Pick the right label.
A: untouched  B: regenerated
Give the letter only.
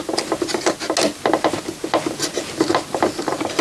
A